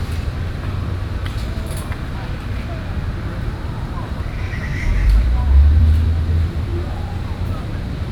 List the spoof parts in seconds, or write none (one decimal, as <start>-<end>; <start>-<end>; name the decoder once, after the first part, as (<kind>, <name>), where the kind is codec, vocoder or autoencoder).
0.0-1.2 (vocoder, BigVGAN v2); 2.9-6.7; 7.6-8.1